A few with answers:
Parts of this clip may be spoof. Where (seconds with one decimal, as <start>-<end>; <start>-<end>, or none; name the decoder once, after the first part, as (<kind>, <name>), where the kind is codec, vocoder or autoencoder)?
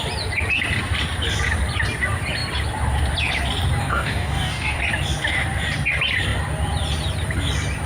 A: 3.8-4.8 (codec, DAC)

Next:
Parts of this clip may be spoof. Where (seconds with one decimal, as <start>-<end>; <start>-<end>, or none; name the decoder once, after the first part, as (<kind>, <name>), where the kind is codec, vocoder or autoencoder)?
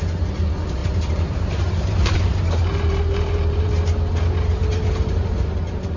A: 0.8-3.7 (vocoder, BigVGAN v2); 4.6-6.0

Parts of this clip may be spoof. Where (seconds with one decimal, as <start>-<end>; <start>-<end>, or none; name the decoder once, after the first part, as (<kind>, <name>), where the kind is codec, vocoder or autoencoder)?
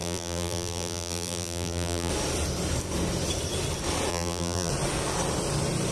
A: 0.0-2.1 (vocoder, BigVGAN v2); 4.1-4.7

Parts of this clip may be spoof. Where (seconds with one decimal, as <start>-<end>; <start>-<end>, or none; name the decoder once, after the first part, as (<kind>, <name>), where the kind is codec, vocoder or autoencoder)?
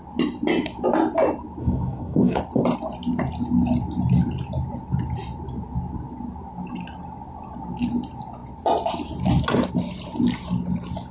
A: 1.6-2.4 (codec, DAC)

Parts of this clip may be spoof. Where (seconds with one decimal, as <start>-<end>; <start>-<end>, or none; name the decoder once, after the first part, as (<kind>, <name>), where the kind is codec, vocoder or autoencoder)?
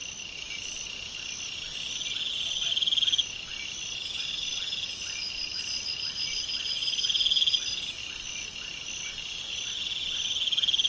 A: none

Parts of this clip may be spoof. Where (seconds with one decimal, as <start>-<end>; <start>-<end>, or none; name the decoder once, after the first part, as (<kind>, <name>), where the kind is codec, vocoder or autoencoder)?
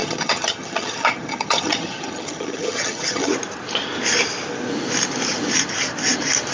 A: 0.0-3.3 (vocoder, HiFi-GAN)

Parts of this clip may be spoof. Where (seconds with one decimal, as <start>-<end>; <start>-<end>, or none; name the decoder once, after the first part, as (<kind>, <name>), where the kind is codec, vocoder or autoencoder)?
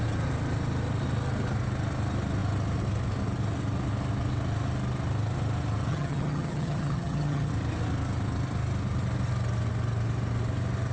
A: 5.9-7.5 (vocoder, HiFi-GAN)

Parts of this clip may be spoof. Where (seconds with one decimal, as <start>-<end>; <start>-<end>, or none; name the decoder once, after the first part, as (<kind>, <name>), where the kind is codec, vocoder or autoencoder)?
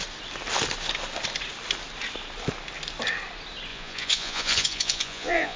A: 3.7-5.6 (vocoder, Vocos)